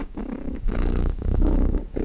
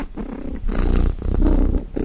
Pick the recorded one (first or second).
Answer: second